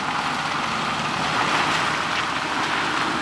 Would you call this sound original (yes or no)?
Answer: yes